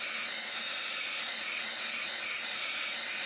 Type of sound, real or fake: real